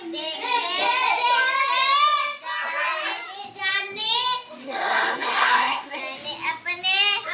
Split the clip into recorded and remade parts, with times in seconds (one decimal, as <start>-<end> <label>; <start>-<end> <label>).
0.0-4.6 recorded; 4.6-6.0 remade; 6.0-7.3 recorded